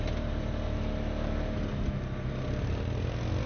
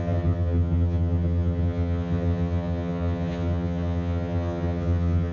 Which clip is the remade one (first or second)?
second